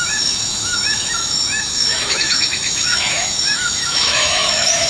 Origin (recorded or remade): remade